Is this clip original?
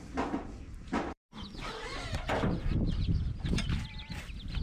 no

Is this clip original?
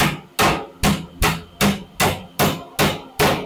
yes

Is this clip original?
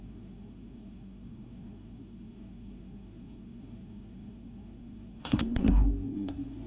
no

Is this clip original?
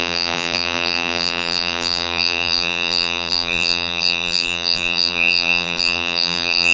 no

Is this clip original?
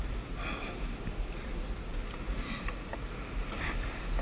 yes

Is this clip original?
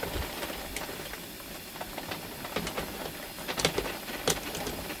yes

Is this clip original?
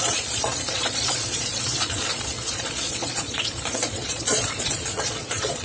no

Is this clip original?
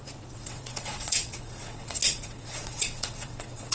no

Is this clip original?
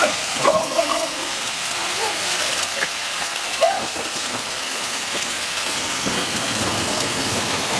no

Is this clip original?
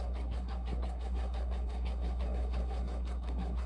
no